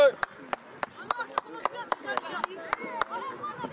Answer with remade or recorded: recorded